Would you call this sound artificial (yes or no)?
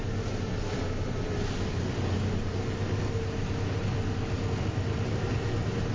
no